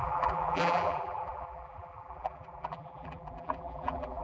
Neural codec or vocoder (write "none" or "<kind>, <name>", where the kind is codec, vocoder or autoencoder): vocoder, BigVGAN v2